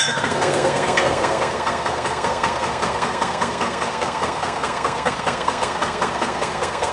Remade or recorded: remade